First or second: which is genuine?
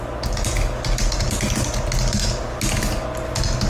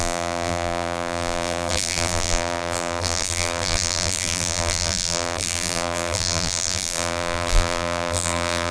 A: first